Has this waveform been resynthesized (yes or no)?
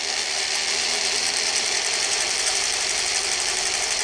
yes